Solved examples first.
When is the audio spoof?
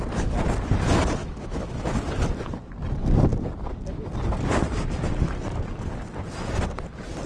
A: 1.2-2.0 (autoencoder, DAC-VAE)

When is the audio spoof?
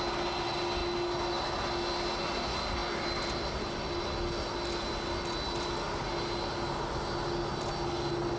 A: none